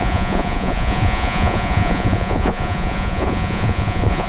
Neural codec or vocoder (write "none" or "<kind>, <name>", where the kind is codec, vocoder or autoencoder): vocoder, Vocos